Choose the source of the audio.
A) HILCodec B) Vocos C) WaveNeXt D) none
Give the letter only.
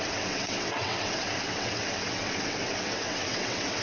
C